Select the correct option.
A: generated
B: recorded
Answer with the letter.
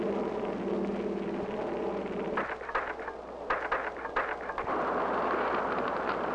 B